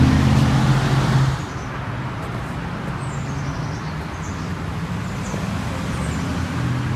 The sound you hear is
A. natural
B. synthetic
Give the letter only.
A